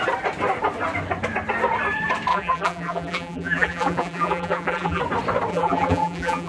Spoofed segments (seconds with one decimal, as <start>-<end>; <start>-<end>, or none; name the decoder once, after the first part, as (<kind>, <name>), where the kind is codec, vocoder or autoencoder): 2.3-5.0 (vocoder, BigVGAN v2); 5.5-6.5